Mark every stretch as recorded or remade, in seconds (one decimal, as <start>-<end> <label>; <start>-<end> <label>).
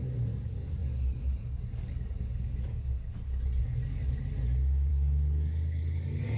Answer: 0.0-3.1 remade; 3.1-3.6 recorded; 3.6-4.2 remade; 4.2-4.9 recorded; 4.9-6.4 remade